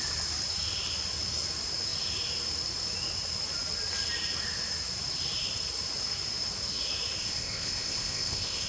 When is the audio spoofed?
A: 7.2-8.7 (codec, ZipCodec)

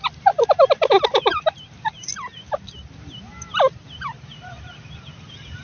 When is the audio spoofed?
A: none